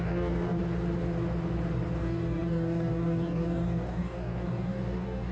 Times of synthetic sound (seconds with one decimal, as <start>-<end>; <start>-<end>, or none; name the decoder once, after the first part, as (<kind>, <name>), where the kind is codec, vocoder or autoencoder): 0.0-0.6 (codec, DAC); 2.0-5.3